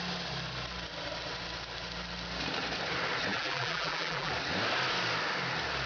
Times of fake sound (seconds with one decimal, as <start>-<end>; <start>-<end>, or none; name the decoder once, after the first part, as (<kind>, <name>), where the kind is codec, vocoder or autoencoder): 3.3-4.3 (vocoder, BigVGAN v2)